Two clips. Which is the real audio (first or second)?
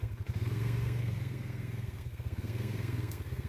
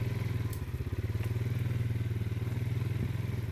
second